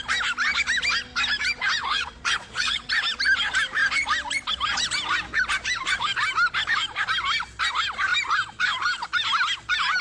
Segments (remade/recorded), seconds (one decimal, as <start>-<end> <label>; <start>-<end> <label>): 0.0-1.8 recorded; 1.8-2.9 remade; 2.9-10.0 recorded